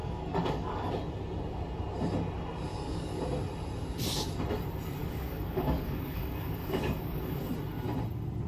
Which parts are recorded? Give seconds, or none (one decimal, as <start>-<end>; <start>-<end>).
0.9-2.7; 3.2-5.0; 7.5-8.5